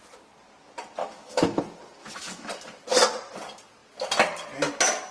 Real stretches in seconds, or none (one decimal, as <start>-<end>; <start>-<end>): 0.0-1.0; 1.6-2.0; 2.5-5.1